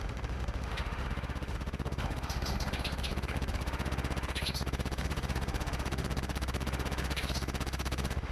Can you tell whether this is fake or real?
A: fake